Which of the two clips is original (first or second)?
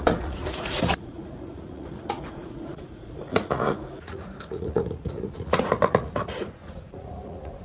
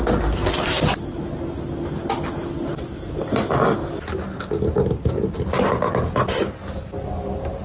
second